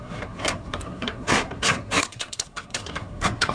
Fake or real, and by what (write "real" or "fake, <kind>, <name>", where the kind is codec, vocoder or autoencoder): fake, codec, SNAC